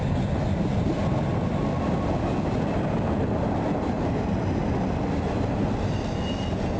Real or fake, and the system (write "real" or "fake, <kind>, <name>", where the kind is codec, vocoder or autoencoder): real